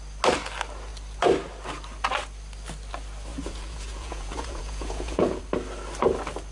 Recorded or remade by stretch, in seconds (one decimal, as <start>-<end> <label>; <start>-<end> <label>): 0.0-3.3 recorded; 3.3-5.4 remade; 5.4-6.5 recorded